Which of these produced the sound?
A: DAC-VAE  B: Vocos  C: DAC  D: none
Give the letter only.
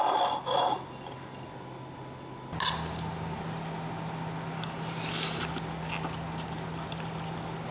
D